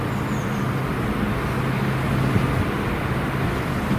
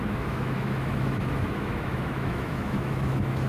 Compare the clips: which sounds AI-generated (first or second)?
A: second